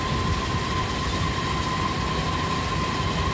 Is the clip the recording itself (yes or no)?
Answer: yes